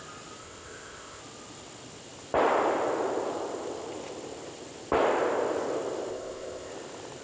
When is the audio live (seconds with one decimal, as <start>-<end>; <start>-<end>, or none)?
0.0-0.4; 1.2-6.1; 6.7-7.2